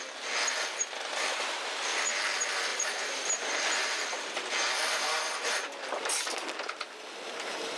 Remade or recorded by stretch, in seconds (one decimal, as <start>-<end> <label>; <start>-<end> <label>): 0.0-2.7 recorded; 2.7-3.6 remade; 3.6-7.8 recorded